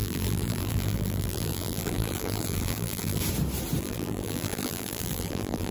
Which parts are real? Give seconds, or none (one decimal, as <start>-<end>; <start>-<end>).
3.2-3.8